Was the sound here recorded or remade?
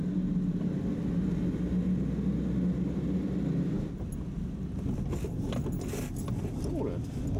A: recorded